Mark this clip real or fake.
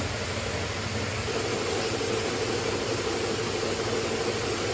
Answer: real